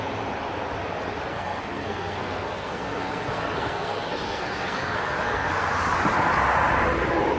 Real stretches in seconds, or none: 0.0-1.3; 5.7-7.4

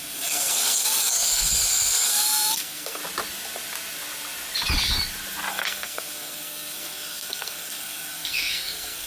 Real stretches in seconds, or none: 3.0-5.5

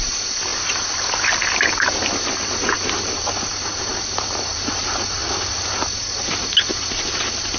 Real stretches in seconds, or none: 0.0-7.6